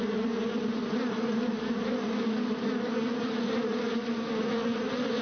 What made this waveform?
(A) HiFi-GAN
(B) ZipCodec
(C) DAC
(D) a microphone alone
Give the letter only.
D